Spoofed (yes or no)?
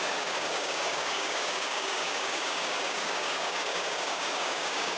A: yes